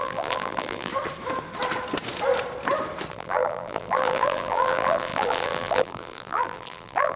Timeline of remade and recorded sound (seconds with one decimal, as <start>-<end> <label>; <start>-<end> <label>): 0.0-0.9 remade; 0.9-3.1 recorded; 3.1-7.2 remade